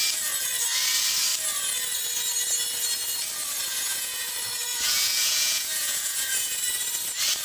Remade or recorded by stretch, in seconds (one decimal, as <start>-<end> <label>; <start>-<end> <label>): 0.0-3.7 recorded; 3.7-4.3 remade; 4.3-4.7 recorded; 4.7-6.6 remade; 6.6-7.4 recorded

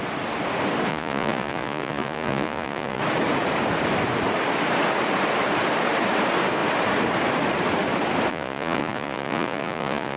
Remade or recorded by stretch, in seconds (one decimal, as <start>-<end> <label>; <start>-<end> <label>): 0.0-0.9 recorded; 0.9-3.0 remade; 3.0-8.3 recorded; 8.3-10.2 remade

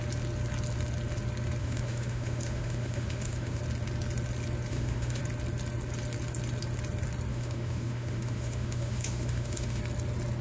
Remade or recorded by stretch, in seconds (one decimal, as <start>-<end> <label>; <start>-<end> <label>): 0.0-1.6 recorded; 1.6-3.6 remade; 3.6-4.7 recorded; 4.7-5.2 remade; 5.2-7.3 recorded; 7.3-9.8 remade; 9.8-10.4 recorded

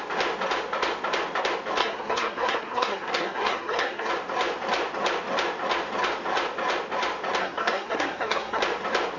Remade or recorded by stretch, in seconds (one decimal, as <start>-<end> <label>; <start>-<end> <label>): 0.0-1.8 recorded; 1.8-4.1 remade; 4.1-7.4 recorded; 7.4-8.6 remade; 8.6-9.2 recorded

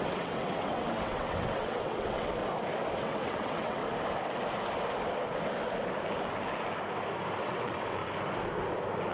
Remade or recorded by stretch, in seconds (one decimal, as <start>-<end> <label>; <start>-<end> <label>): 0.0-2.4 remade; 2.4-3.0 recorded; 3.0-3.8 remade; 3.8-7.4 recorded; 7.4-8.0 remade; 8.0-9.1 recorded

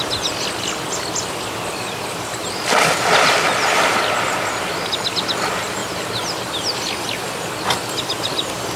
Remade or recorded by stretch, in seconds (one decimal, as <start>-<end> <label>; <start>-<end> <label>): 0.0-8.8 recorded